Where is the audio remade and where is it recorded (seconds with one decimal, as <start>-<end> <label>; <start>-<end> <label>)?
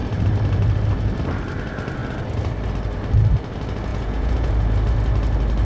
0.0-3.9 recorded; 3.9-4.5 remade; 4.5-5.6 recorded